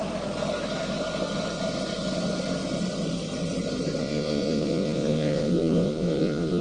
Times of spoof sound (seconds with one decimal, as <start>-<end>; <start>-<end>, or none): 4.0-6.6

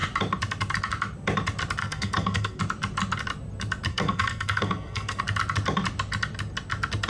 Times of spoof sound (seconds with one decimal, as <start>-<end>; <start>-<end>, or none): 1.8-2.6; 3.9-5.2